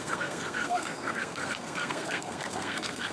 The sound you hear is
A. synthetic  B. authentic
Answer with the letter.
A